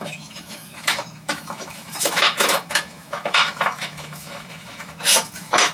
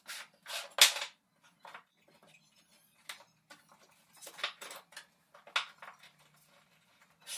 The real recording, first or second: second